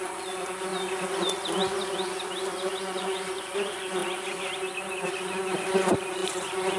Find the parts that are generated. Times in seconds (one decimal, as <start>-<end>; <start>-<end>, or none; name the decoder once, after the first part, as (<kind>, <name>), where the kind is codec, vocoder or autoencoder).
0.0-0.7 (vocoder, Vocos); 2.8-4.0; 5.1-6.8